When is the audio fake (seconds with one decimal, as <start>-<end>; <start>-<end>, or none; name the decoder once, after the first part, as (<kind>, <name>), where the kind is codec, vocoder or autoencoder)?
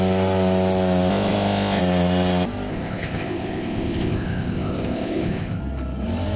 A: 1.1-1.8 (codec, ZipCodec); 2.7-5.6